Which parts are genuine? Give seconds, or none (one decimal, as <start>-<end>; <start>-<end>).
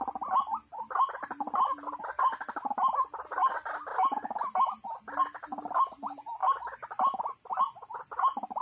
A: 0.0-8.6